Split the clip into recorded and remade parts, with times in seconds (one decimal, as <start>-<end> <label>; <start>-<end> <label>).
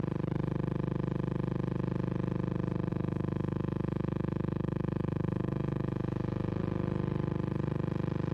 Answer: 0.0-2.9 recorded; 2.9-6.6 remade; 6.6-8.3 recorded